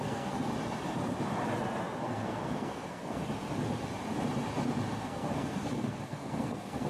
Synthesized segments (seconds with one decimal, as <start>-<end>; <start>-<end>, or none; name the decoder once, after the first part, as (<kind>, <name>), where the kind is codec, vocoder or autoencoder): 0.0-0.5 (codec, SNAC); 2.0-3.2; 5.0-6.9

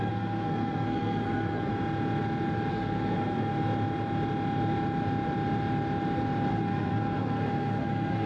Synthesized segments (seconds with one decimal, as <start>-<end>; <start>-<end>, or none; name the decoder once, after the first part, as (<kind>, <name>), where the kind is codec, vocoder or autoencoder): 0.0-1.7 (codec, SNAC); 2.7-3.5; 6.5-8.3